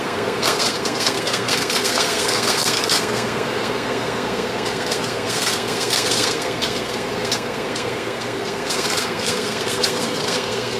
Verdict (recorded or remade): remade